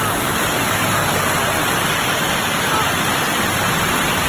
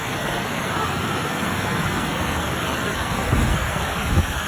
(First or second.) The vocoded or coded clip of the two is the second